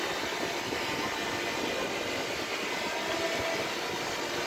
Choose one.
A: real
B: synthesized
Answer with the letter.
A